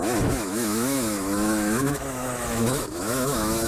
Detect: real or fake fake